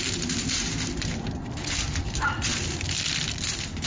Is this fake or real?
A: real